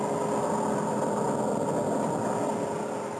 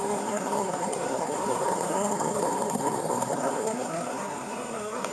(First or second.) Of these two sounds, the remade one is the second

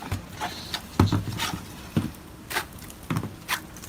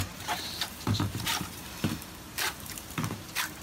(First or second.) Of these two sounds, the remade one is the second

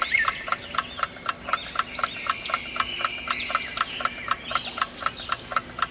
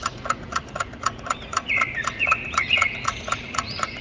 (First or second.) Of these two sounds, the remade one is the second